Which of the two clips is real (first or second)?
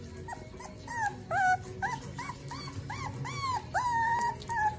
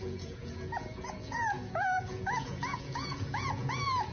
first